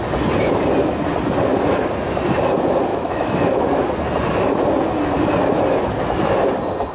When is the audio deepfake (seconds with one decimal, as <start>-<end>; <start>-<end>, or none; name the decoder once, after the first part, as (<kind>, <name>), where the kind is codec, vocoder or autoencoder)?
2.9-3.6 (autoencoder, DAC-VAE)